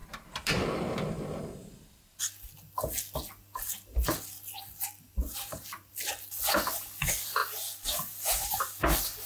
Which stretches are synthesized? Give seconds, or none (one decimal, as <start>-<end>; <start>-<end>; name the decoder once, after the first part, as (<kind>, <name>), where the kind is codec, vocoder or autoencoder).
0.0-2.2 (vocoder, BigVGAN v2); 5.1-5.9

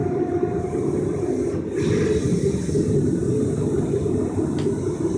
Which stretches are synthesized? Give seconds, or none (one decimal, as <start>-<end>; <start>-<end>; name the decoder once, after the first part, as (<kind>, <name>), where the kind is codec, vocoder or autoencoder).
0.0-0.8 (vocoder, BigVGAN v2)

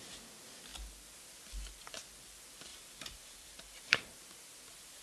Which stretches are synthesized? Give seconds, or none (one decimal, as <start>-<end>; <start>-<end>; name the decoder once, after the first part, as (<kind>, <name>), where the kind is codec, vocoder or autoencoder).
2.7-4.2 (vocoder, BigVGAN v2)